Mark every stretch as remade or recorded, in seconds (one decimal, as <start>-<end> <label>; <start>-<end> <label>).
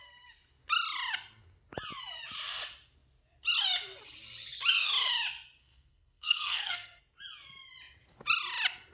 0.0-5.6 recorded; 5.6-7.0 remade; 7.0-8.9 recorded